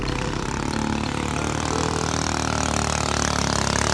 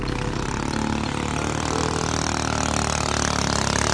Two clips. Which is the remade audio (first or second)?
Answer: first